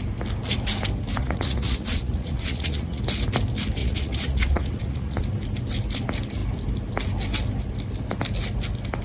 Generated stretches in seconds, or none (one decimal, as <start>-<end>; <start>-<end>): 1.2-3.0; 3.8-5.2